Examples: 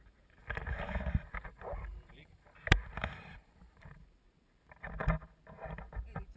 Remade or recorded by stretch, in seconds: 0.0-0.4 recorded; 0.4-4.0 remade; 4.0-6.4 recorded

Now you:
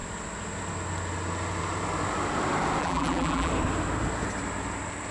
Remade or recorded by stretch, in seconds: 0.0-2.8 recorded; 2.8-3.5 remade; 3.5-5.1 recorded